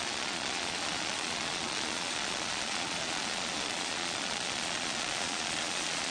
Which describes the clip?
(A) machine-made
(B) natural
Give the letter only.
A